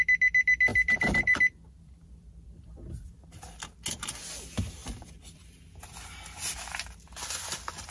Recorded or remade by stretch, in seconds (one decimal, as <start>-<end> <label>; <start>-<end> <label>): 0.0-0.7 recorded; 0.7-3.6 remade; 3.6-4.8 recorded; 4.8-5.6 remade; 5.6-7.9 recorded